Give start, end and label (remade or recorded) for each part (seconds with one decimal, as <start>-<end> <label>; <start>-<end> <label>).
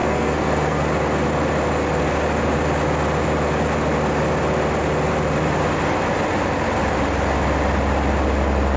0.0-0.8 remade; 0.8-8.8 recorded